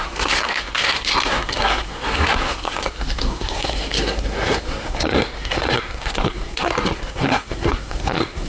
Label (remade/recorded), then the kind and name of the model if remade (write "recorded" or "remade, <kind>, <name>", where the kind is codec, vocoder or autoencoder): remade, codec, SNAC